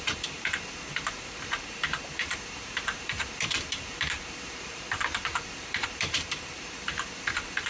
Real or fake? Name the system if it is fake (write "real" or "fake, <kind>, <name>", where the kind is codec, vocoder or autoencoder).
fake, vocoder, BigVGAN v2